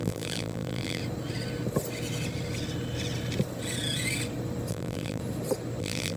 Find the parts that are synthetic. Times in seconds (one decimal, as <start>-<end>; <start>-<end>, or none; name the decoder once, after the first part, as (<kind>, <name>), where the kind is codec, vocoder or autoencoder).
0.0-1.0 (vocoder, BigVGAN v2); 4.7-5.2; 5.8-6.2